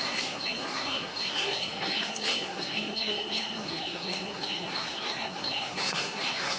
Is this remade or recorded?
remade